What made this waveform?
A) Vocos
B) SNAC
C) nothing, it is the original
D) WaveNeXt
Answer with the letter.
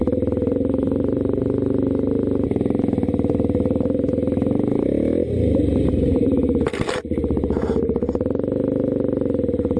C